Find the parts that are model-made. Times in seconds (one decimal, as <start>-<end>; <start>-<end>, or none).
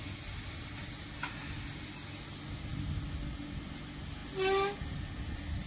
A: none